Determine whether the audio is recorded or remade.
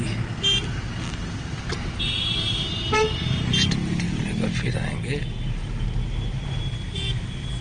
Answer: recorded